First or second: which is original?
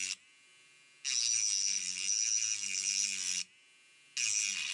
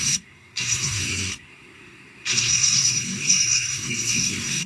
first